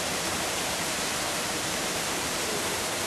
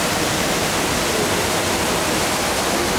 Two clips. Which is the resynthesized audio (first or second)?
first